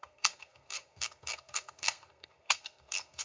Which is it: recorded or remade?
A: remade